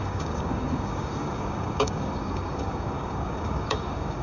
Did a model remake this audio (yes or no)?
yes